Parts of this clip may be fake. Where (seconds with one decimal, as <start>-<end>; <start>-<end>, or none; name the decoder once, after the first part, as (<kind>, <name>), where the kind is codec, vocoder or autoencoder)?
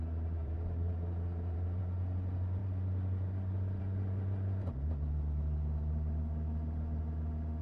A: 0.4-1.8 (vocoder, BigVGAN v2); 2.6-3.8